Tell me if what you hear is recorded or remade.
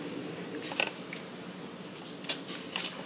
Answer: recorded